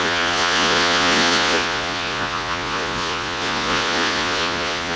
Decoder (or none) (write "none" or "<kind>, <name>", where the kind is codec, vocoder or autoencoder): vocoder, Vocos